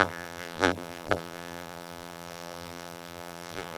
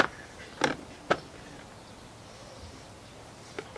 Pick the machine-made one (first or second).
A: first